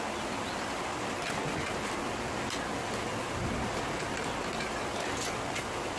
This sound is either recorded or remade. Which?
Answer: recorded